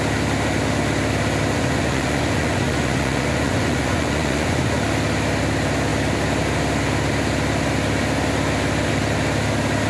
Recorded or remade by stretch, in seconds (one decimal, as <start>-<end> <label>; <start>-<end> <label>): 0.0-1.5 recorded; 1.5-4.8 remade; 4.8-9.9 recorded